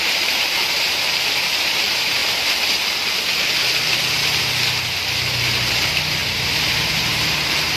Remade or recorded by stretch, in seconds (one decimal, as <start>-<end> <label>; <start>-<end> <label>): 0.0-2.2 remade; 2.2-5.7 recorded; 5.7-7.8 remade